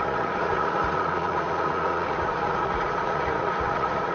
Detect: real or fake fake